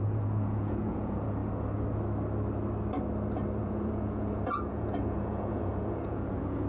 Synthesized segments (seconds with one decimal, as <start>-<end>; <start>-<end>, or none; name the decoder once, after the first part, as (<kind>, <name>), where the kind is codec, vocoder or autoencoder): 0.0-1.4 (vocoder, Vocos); 3.6-6.7

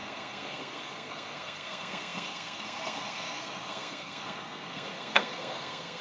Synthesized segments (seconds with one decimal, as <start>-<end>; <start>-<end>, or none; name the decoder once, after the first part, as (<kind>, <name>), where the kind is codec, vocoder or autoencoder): 0.0-6.0 (codec, SNAC)